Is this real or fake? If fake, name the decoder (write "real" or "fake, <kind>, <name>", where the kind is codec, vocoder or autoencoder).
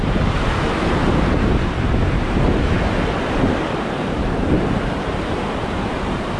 fake, vocoder, BigVGAN v2